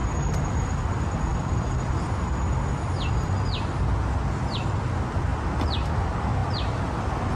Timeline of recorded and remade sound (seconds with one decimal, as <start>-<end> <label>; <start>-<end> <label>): 0.0-1.3 recorded; 1.3-1.9 remade; 1.9-6.4 recorded; 6.4-7.3 remade